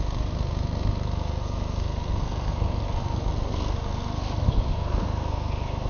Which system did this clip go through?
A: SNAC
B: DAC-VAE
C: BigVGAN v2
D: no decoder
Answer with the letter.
A